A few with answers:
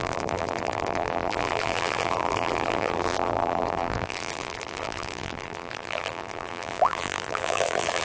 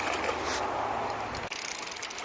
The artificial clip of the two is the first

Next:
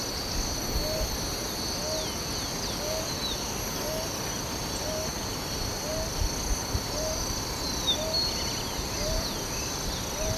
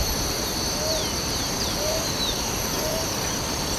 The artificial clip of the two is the second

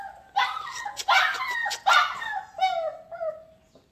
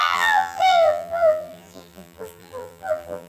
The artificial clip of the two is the second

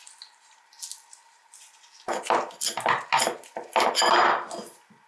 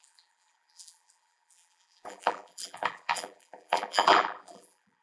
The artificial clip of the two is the second